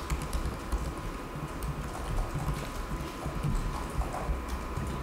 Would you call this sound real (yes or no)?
yes